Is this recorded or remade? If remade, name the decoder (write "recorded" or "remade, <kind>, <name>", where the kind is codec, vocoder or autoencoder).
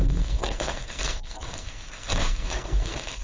remade, codec, SNAC